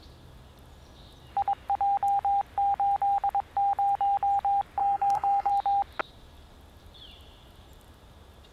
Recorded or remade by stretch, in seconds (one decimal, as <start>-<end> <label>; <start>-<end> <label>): 0.0-4.8 recorded; 4.8-5.5 remade; 5.5-8.5 recorded